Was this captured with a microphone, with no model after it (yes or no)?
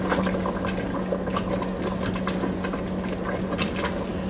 yes